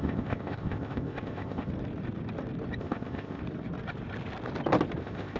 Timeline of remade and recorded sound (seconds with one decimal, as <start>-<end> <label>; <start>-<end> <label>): 0.0-1.7 remade; 1.7-2.8 recorded; 2.8-3.4 remade; 3.4-5.0 recorded; 5.0-5.4 remade